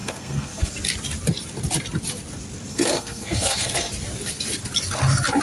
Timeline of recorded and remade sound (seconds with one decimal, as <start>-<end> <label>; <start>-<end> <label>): 0.0-0.7 remade; 0.7-2.7 recorded; 2.7-3.9 remade; 3.9-5.4 recorded